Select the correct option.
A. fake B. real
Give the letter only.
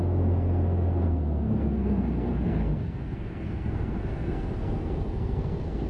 A